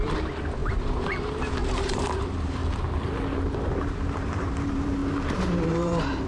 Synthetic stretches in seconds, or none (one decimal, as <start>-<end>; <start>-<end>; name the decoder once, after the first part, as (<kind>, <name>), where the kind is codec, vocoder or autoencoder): 0.0-2.6 (vocoder, BigVGAN v2); 3.8-6.3